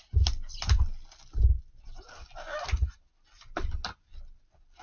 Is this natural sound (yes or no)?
yes